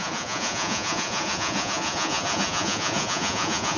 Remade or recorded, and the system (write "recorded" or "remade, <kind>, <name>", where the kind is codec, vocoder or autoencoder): remade, vocoder, Vocos